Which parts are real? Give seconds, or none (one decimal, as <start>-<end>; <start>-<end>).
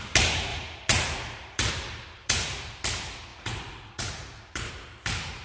0.0-0.5; 1.7-2.2; 2.7-3.3; 4.7-5.4